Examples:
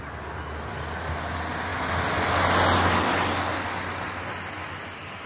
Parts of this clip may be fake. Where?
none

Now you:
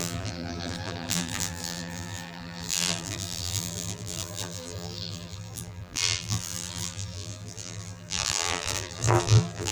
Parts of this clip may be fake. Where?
0.0-9.7 (vocoder, BigVGAN v2)

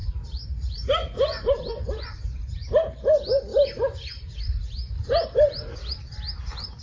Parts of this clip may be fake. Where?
0.0-1.7 (vocoder, BigVGAN v2); 3.5-4.4

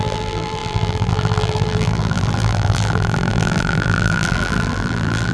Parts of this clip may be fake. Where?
0.0-5.3 (vocoder, BigVGAN v2)

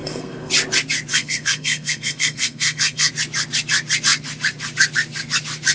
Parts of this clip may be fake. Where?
0.0-0.5 (codec, SNAC); 1.1-3.1

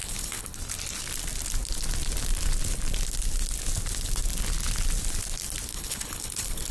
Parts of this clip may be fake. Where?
0.0-0.6 (codec, HILCodec); 5.7-6.7

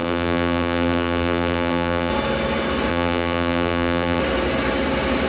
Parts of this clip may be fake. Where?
0.0-2.1 (vocoder, BigVGAN v2); 2.9-4.2